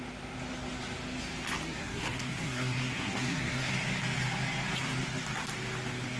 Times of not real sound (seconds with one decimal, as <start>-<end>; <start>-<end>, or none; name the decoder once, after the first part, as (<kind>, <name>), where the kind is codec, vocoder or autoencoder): 1.8-3.7 (codec, SNAC)